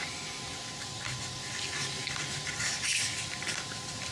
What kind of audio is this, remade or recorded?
recorded